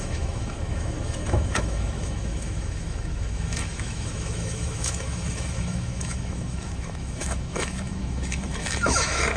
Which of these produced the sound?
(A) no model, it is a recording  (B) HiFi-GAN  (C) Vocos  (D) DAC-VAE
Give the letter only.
D